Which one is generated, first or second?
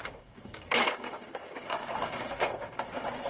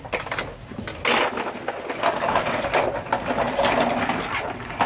first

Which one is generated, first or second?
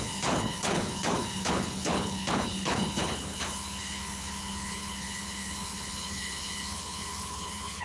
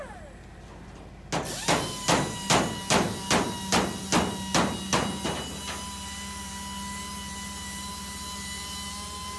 first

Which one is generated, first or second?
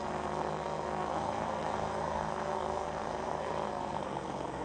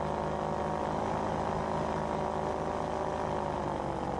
first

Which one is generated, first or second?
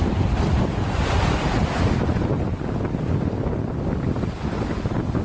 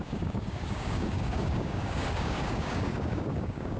second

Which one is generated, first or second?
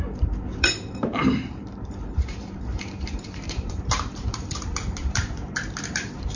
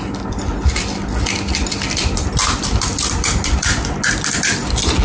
first